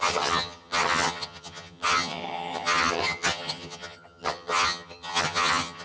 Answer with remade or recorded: remade